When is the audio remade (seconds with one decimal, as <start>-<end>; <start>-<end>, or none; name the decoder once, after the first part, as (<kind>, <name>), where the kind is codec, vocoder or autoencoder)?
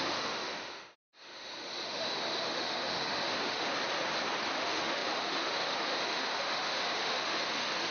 0.0-3.8 (autoencoder, DAC-VAE); 4.5-7.9